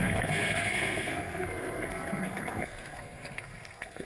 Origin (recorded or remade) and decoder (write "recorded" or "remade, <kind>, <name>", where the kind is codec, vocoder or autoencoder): remade, codec, SNAC